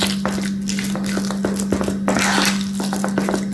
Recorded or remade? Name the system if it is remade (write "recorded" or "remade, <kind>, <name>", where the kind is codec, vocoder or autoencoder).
recorded